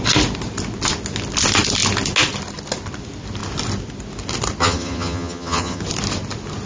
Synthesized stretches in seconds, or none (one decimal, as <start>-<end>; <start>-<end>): 4.6-5.8